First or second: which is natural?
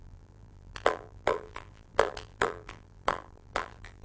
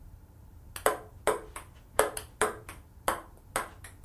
second